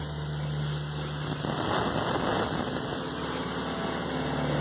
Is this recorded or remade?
recorded